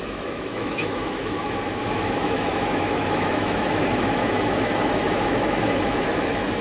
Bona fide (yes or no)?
no